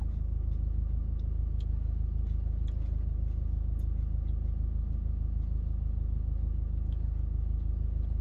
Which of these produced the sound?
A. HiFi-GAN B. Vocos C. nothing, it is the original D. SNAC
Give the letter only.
C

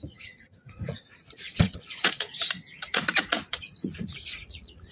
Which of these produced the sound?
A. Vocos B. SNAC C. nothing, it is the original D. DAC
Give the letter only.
A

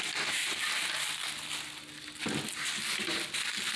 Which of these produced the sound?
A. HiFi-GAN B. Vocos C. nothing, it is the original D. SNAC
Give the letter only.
C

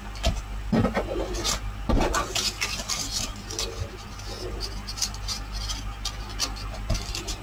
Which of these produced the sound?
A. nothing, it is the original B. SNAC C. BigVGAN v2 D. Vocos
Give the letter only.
A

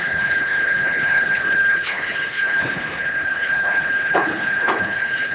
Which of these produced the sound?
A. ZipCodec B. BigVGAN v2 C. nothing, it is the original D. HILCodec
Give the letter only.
D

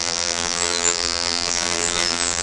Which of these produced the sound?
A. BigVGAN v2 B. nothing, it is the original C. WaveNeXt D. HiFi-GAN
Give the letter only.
A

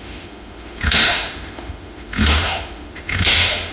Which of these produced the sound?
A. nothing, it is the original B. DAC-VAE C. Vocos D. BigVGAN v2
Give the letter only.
B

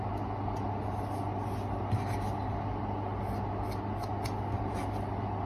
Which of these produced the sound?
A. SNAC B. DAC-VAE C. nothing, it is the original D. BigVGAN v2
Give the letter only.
C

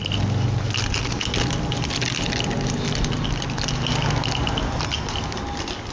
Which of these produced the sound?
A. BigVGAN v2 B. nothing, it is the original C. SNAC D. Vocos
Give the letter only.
B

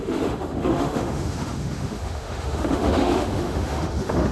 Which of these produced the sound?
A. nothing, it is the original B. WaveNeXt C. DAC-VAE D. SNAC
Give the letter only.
C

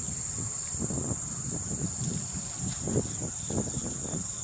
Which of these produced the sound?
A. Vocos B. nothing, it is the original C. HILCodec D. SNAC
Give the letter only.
B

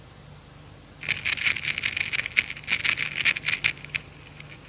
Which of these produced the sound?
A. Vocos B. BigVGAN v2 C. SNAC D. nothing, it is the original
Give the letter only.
D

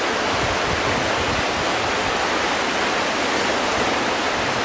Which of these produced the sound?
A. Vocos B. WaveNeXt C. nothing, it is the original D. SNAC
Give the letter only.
C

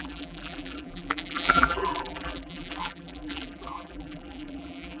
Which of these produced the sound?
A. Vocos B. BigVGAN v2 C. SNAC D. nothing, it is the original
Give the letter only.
B